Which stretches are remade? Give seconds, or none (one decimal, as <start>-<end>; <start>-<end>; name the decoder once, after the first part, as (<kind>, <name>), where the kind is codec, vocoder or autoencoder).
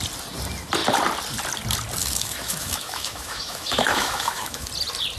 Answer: 2.0-4.7 (autoencoder, DAC-VAE)